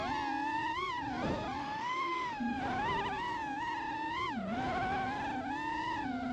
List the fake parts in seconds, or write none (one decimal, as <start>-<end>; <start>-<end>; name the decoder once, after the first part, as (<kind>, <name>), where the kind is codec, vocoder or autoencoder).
1.6-2.6 (autoencoder, DAC-VAE)